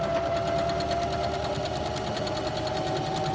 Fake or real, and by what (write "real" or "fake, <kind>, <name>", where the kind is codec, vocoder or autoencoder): real